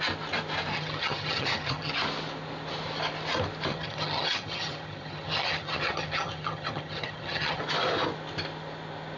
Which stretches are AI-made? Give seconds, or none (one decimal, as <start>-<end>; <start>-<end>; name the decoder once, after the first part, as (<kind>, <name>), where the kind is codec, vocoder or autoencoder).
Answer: 0.7-1.9 (vocoder, HiFi-GAN); 3.7-7.6